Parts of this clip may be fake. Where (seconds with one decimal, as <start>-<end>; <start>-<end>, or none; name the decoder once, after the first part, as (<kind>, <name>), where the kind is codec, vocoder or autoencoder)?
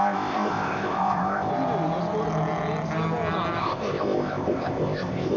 0.0-1.5 (codec, ZipCodec); 3.6-5.4